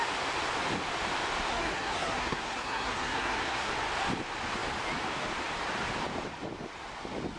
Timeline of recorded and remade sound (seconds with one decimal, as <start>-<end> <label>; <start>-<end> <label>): 0.0-1.5 recorded; 1.5-3.7 remade; 3.7-7.4 recorded